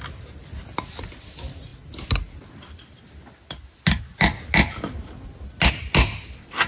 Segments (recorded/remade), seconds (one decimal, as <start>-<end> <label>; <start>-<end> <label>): 0.0-6.7 recorded